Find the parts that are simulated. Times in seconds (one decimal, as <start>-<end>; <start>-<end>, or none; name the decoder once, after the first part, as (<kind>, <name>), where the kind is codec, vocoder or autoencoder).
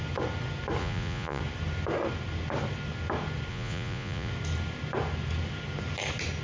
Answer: 0.8-1.4 (vocoder, Vocos); 3.5-4.3